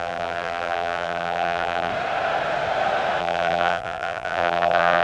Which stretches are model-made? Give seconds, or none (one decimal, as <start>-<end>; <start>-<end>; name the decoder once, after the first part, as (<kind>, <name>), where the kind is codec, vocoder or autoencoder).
0.0-1.9 (vocoder, BigVGAN v2); 3.2-5.0